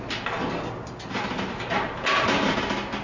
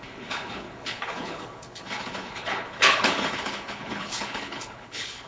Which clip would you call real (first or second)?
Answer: first